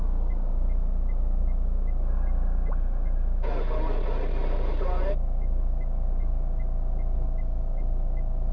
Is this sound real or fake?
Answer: real